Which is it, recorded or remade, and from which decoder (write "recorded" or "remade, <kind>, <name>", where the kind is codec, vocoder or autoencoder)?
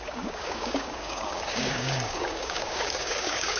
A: remade, codec, DAC